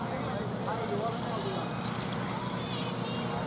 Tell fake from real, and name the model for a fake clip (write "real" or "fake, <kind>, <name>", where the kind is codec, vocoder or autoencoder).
real